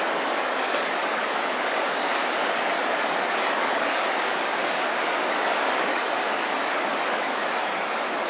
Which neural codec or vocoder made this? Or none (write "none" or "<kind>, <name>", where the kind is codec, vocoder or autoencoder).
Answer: codec, DAC